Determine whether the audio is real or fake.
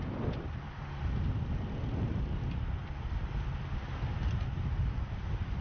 real